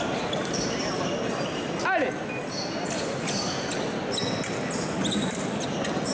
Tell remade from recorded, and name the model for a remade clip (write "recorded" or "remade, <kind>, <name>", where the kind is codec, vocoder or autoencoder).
recorded